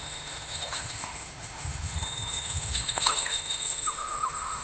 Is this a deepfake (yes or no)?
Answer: yes